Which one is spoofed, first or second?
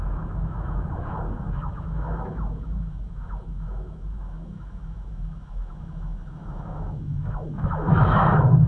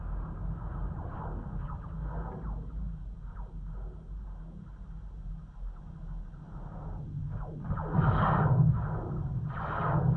first